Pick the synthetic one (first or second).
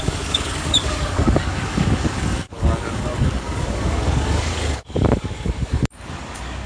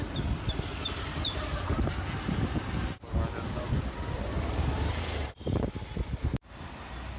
first